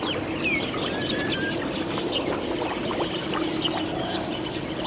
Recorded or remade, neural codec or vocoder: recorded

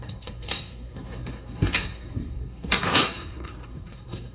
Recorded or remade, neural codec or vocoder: remade, codec, SNAC